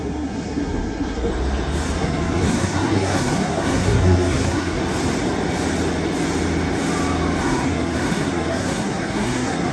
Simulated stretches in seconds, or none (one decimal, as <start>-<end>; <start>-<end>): 0.0-1.3; 1.9-4.8; 7.4-9.7